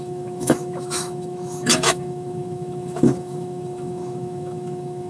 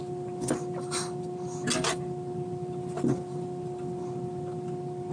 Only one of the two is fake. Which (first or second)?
first